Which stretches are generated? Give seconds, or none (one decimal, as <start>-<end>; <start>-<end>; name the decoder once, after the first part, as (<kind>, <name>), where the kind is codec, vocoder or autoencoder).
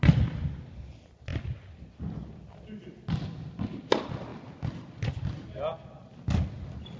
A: none